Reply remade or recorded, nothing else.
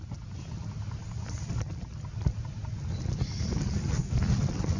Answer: recorded